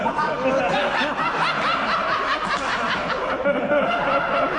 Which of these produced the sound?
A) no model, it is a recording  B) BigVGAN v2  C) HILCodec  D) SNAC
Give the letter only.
A